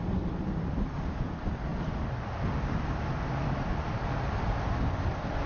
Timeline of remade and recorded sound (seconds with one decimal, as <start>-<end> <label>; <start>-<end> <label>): 0.0-5.5 recorded